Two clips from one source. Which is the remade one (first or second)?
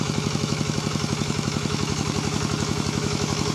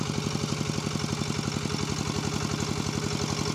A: first